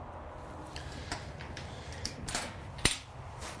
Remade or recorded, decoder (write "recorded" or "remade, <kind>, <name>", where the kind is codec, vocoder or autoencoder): recorded